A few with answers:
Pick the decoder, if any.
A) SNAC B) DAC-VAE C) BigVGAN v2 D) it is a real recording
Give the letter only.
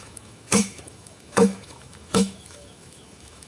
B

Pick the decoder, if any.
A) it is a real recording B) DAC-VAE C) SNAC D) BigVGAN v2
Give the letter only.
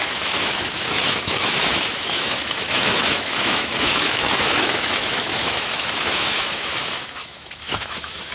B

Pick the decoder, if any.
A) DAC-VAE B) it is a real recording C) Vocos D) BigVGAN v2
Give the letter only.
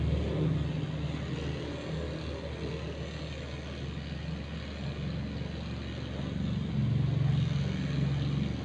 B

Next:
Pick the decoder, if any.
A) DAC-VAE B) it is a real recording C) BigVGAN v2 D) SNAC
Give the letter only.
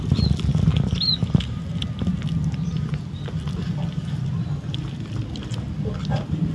B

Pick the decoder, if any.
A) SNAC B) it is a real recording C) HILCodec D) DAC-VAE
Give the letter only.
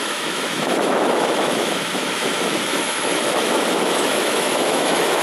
D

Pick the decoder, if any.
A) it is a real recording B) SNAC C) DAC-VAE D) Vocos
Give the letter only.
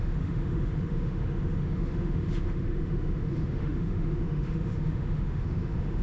C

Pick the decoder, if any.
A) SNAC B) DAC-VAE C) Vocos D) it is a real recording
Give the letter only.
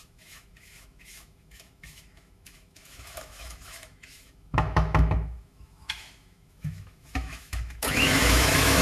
B